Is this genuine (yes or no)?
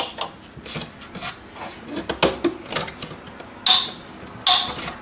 yes